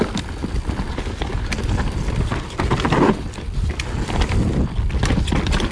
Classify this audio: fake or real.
real